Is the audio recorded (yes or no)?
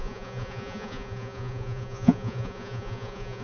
no